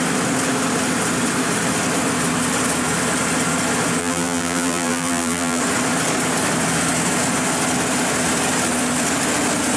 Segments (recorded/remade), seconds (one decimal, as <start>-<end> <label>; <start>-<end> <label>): 0.0-4.0 recorded; 4.0-5.6 remade; 5.6-9.8 recorded